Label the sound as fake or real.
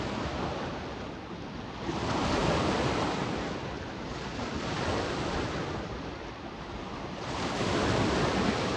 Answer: real